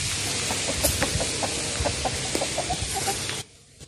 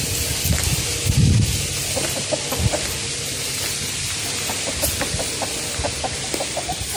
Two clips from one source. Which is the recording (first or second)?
first